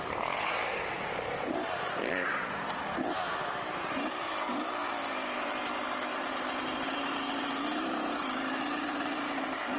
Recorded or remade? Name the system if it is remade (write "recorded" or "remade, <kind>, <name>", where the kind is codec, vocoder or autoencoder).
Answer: remade, vocoder, BigVGAN v2